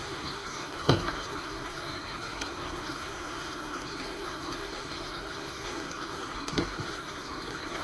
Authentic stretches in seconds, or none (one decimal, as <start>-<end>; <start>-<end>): none